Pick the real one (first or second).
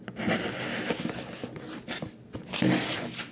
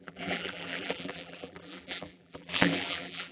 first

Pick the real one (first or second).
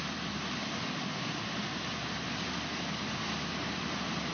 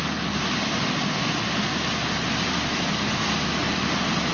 second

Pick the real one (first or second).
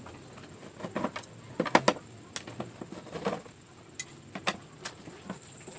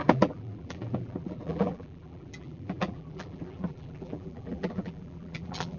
first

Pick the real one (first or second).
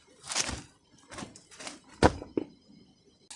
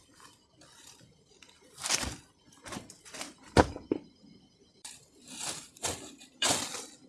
first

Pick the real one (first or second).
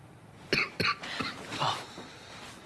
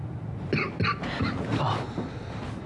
second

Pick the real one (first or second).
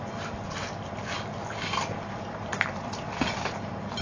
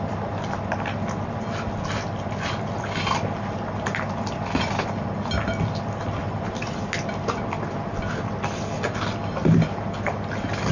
second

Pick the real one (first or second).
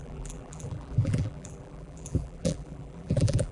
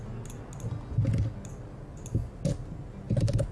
second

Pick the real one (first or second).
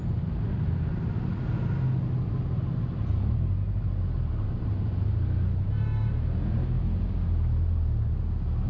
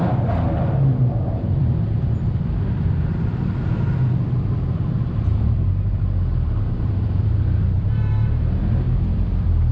first